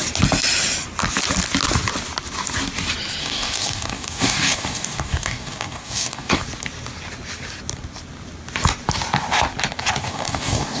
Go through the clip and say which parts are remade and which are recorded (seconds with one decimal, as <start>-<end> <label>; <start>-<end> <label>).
0.0-3.2 recorded; 3.2-6.4 remade; 6.4-10.0 recorded; 10.0-10.8 remade